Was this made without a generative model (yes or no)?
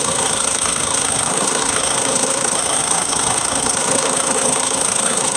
no